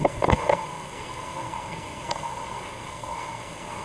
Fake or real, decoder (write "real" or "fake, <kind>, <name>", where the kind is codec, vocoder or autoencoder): fake, codec, SNAC